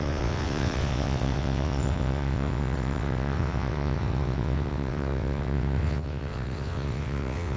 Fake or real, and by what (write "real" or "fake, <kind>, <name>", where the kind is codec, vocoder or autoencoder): fake, vocoder, WaveNeXt